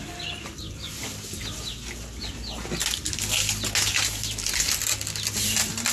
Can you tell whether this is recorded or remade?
recorded